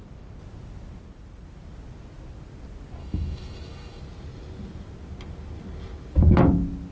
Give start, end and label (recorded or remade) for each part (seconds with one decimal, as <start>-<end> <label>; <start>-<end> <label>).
0.0-3.0 recorded; 3.0-4.0 remade; 4.0-6.9 recorded